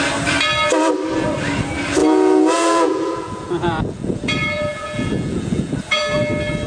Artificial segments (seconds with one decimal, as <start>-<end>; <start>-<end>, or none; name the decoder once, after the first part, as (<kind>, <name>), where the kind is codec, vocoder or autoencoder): 2.0-6.0 (vocoder, Vocos)